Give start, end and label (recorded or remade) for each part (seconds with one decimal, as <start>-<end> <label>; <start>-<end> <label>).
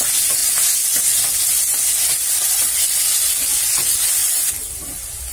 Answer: 0.0-5.3 recorded